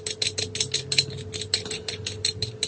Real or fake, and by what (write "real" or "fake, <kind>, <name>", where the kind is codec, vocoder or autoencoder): real